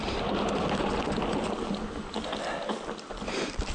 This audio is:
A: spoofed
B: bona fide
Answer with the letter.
B